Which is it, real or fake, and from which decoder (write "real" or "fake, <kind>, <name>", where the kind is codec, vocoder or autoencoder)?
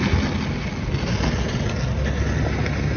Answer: real